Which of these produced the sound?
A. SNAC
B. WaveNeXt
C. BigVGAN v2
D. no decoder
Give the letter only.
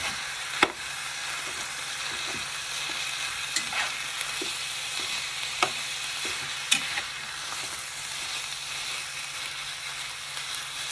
D